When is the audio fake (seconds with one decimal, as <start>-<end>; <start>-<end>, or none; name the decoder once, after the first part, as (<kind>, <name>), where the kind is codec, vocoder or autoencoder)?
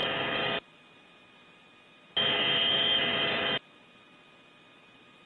none